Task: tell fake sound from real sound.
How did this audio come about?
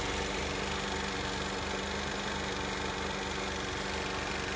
real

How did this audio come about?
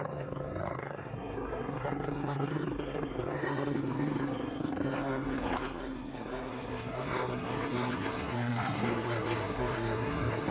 fake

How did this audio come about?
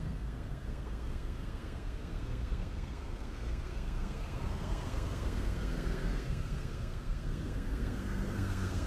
fake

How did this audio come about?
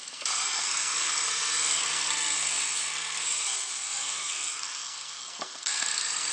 fake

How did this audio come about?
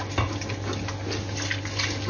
real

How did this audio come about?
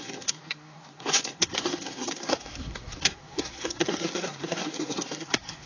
fake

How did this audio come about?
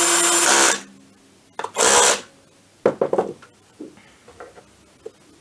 real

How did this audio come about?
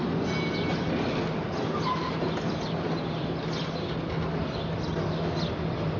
real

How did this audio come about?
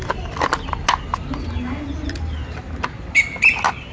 real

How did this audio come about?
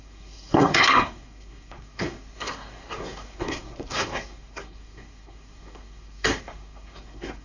fake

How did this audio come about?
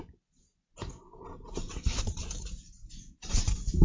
real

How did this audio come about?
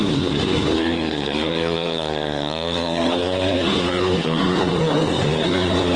fake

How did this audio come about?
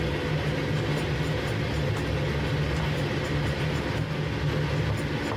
real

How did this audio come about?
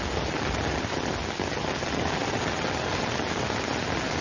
real